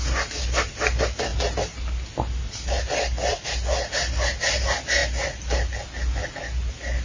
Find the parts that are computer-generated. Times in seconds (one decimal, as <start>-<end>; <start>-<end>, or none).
none